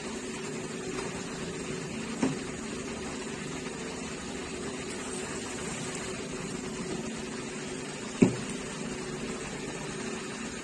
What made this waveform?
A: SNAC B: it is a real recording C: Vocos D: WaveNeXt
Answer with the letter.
B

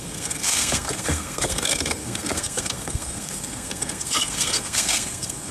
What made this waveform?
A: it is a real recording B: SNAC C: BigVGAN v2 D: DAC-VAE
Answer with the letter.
B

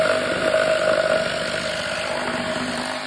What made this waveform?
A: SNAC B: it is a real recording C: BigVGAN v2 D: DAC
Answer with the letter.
B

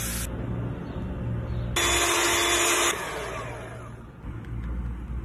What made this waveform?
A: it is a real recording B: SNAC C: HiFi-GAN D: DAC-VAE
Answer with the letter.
A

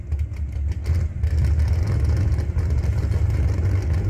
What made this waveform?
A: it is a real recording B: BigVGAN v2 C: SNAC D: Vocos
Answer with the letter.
A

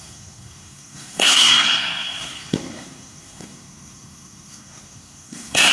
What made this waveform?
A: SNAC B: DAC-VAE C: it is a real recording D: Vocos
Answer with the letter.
A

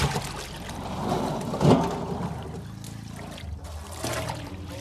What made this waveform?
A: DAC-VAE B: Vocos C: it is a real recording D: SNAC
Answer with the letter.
C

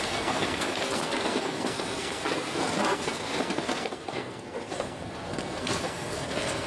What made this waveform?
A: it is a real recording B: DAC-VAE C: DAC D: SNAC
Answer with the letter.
D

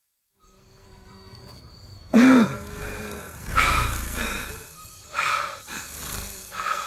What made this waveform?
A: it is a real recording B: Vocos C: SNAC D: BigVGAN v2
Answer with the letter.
C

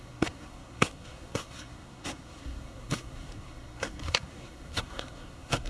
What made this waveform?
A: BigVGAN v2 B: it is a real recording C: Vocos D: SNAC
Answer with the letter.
D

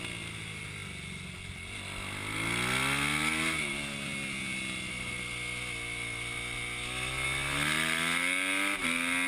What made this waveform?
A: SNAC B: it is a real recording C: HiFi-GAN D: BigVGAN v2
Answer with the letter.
B